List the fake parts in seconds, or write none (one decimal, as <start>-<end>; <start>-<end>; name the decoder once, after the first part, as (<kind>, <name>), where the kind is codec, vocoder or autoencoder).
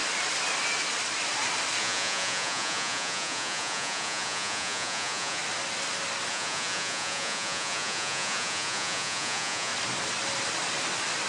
1.8-5.4 (vocoder, Vocos); 6.3-9.7